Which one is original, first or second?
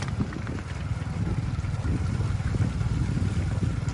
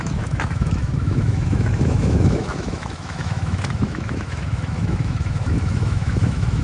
first